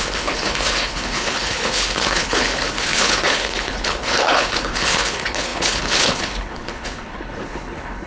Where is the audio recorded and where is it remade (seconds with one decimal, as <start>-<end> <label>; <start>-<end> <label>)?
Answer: 0.0-8.1 remade